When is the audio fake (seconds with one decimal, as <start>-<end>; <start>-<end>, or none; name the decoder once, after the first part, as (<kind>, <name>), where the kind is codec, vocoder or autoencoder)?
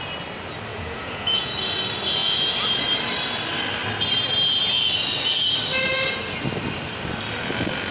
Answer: 0.7-1.5 (vocoder, Vocos)